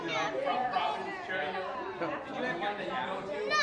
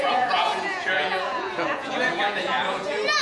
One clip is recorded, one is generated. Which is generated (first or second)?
second